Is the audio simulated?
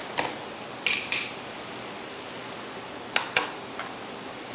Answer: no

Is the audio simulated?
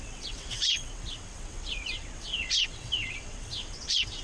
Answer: yes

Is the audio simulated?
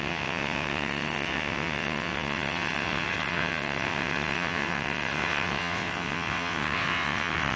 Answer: yes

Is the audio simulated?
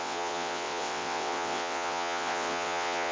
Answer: yes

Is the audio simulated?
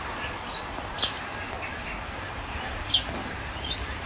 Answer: no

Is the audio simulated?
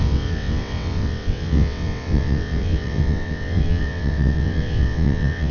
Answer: yes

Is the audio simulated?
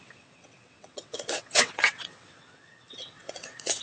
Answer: yes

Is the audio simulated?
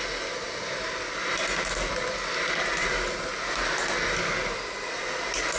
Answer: no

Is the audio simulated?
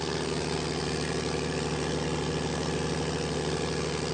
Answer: no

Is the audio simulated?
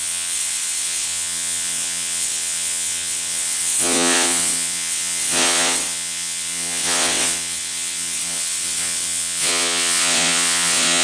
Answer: yes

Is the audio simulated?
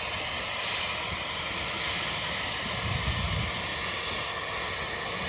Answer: no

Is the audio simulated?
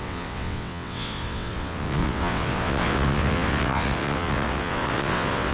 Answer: yes